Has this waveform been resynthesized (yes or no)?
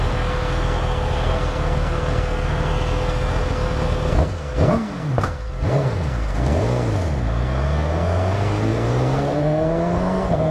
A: yes